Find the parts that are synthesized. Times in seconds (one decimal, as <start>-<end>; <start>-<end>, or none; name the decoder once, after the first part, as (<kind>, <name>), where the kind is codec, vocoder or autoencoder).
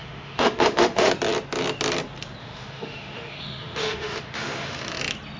0.0-1.1 (autoencoder, DAC-VAE); 2.4-5.0